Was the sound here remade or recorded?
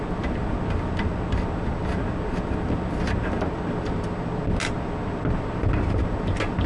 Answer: recorded